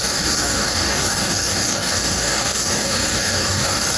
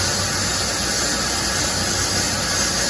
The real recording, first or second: second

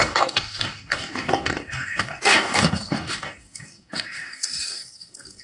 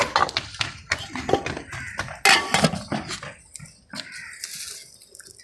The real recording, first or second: second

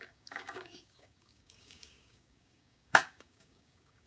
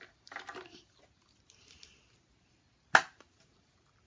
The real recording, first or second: second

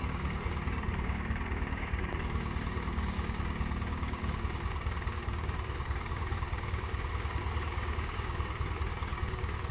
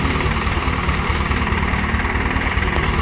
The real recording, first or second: second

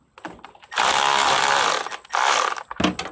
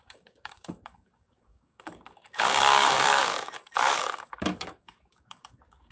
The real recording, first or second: first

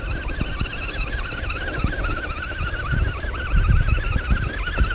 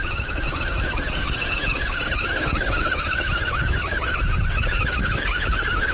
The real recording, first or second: first